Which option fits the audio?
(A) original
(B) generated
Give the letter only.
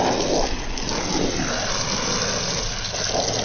A